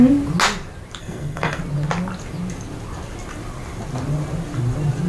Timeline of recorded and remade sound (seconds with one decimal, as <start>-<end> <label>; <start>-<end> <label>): 0.0-1.0 recorded; 1.0-1.6 remade; 1.6-5.1 recorded